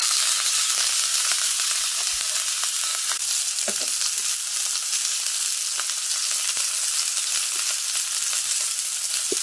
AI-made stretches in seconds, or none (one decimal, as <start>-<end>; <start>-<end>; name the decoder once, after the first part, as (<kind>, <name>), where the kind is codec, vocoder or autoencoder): 1.1-2.2 (vocoder, BigVGAN v2)

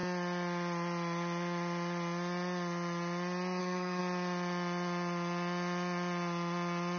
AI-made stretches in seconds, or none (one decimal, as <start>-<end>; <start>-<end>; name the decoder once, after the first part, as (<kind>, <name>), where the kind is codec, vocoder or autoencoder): 3.6-4.0 (codec, SNAC)

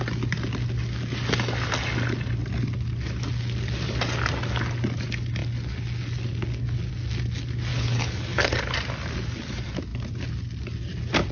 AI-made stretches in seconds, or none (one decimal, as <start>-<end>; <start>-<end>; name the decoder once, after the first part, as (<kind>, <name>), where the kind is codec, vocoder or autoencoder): 7.7-8.6 (codec, HILCodec)

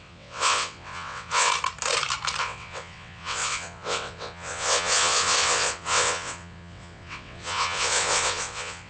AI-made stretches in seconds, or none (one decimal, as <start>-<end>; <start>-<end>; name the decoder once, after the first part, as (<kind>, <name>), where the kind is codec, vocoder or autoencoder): 0.0-1.5 (vocoder, WaveNeXt); 2.4-8.9

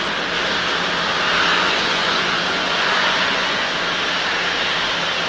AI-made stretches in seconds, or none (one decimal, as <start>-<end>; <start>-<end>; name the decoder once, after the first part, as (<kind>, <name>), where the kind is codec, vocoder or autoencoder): 1.5-3.7 (vocoder, Vocos)

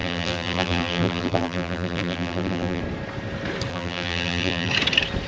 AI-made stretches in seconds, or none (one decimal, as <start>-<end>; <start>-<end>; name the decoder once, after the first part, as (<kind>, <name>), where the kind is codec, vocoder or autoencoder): 0.0-2.8 (vocoder, BigVGAN v2); 3.7-4.7